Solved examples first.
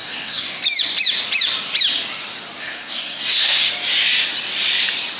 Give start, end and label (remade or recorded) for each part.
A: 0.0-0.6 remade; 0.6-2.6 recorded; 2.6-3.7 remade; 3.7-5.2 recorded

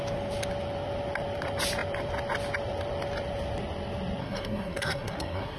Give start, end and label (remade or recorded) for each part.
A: 0.0-4.2 recorded; 4.2-5.6 remade